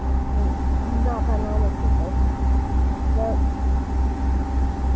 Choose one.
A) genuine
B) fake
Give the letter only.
A